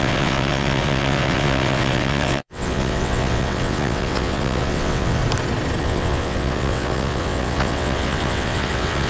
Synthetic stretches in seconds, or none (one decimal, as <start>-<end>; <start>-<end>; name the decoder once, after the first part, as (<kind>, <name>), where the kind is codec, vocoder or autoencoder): 0.0-5.2 (vocoder, WaveNeXt); 5.8-9.1